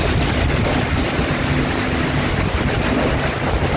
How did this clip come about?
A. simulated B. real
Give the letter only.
B